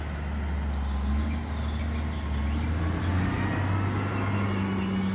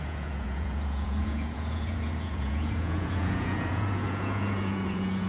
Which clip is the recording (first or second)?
first